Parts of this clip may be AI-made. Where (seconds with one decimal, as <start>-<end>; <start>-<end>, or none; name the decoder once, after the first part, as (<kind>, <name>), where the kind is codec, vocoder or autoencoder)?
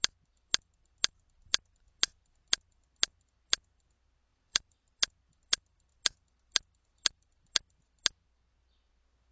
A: 4.3-5.0 (vocoder, BigVGAN v2)